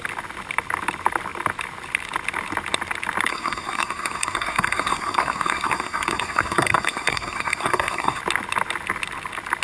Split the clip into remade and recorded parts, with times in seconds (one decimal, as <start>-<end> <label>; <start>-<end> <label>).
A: 0.0-3.3 recorded; 3.3-8.2 remade; 8.2-9.6 recorded